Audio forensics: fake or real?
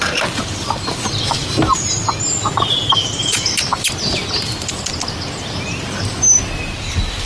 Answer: real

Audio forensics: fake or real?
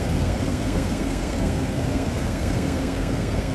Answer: fake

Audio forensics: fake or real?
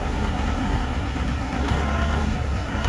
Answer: fake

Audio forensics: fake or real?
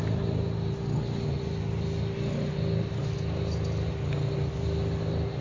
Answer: real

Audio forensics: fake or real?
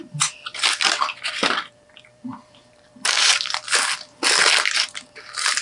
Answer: real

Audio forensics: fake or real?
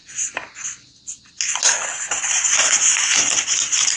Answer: real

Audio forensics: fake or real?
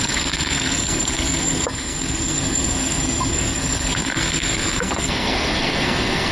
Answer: fake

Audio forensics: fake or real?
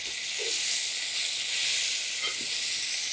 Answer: real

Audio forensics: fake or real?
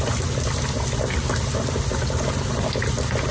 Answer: real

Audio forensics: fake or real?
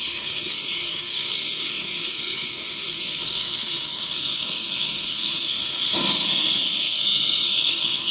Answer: fake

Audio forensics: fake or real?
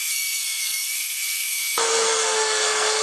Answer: fake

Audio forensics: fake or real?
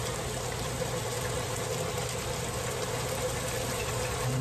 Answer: real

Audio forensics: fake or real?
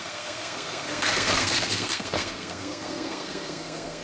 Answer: fake